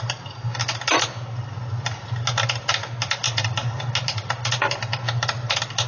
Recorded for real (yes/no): yes